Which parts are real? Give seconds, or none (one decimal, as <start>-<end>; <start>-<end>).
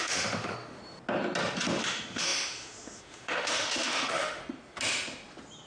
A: 0.8-1.8; 4.4-5.7